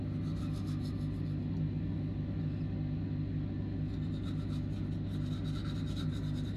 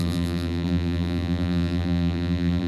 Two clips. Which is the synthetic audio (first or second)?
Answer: second